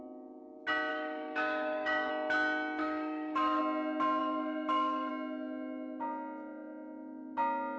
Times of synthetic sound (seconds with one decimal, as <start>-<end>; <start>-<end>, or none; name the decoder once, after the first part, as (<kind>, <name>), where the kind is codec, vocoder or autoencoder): 0.9-2.1 (codec, DAC); 2.8-3.6; 4.2-5.1